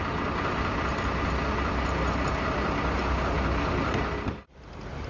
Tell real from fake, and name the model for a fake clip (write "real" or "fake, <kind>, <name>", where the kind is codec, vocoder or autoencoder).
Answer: real